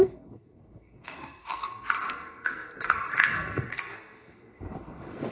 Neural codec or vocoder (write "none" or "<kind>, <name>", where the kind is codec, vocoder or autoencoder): codec, SNAC